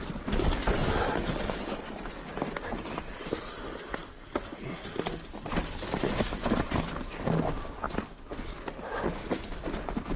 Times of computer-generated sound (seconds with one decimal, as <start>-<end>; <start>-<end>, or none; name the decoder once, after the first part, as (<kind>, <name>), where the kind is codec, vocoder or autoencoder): 0.0-4.0 (vocoder, BigVGAN v2); 5.6-10.2